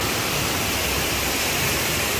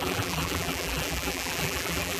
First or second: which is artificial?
second